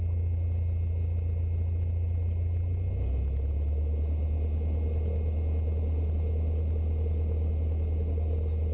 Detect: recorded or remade recorded